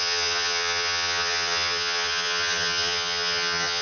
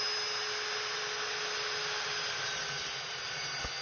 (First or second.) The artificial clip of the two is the first